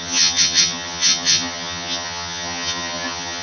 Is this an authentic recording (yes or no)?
no